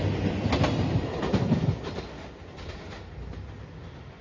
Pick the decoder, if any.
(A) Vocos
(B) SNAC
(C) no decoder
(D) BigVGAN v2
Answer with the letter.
C